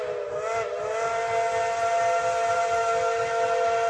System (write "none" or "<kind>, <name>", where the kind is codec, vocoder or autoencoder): none